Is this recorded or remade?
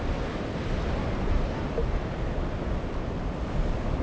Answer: recorded